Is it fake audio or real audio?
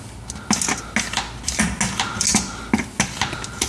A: real